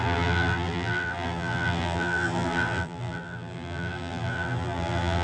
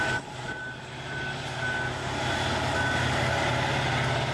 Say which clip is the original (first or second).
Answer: second